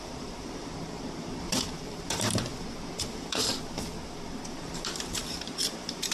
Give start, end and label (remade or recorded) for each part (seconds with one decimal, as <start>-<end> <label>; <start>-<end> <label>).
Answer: 0.0-2.5 remade; 2.5-3.1 recorded; 3.1-3.5 remade; 3.5-4.6 recorded; 4.6-6.1 remade